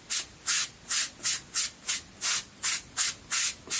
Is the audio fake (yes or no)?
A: no